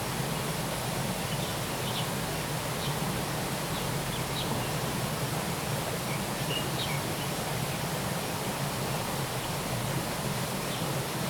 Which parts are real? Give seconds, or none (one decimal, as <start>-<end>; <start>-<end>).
0.0-11.3